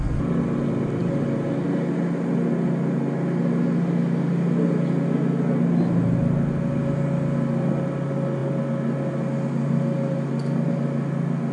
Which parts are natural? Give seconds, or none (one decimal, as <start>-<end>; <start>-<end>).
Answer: 0.0-11.5